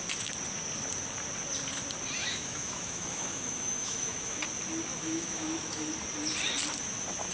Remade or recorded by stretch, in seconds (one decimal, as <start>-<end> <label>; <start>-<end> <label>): 0.0-2.2 recorded; 2.2-4.4 remade; 4.4-4.9 recorded; 4.9-5.9 remade; 5.9-7.3 recorded